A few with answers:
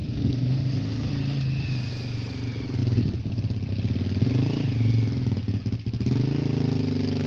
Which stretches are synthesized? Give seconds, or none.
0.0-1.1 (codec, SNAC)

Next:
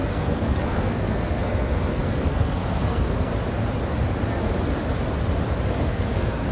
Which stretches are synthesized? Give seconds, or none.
0.0-3.3 (codec, SNAC); 5.7-6.5

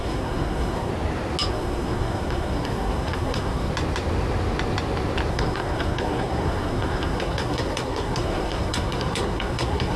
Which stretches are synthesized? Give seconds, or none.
0.0-0.9 (codec, SNAC); 1.5-3.7; 5.3-10.0

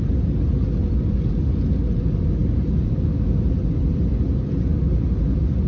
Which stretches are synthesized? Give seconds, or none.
none

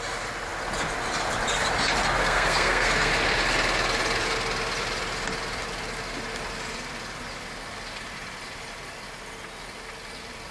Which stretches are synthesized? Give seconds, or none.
2.2-3.1 (codec, SNAC)

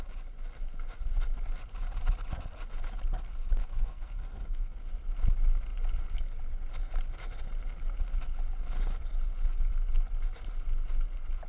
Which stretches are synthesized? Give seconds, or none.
3.6-4.8 (codec, SNAC)

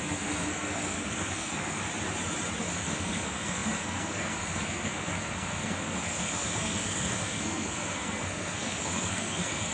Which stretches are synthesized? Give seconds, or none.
0.0-1.8 (codec, SNAC); 2.6-9.7